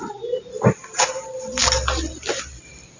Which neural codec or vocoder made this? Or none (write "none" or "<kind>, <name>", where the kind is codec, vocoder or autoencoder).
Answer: vocoder, BigVGAN v2